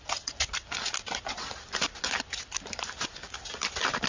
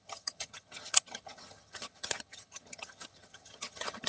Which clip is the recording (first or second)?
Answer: first